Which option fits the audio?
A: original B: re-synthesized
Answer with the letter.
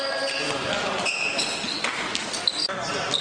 A